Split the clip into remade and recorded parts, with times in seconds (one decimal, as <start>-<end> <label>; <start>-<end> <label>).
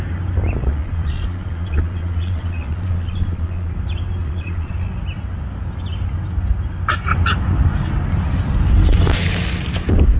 0.0-0.6 recorded; 0.6-3.7 remade; 3.7-4.2 recorded; 4.2-4.7 remade; 4.7-10.2 recorded